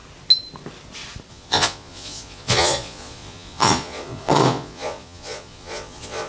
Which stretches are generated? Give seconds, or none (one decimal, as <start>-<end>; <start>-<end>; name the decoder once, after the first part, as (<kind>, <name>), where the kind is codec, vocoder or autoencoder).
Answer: 1.3-6.3 (vocoder, Vocos)